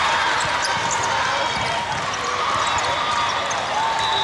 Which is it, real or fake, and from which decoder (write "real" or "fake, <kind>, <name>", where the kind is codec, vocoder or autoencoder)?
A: real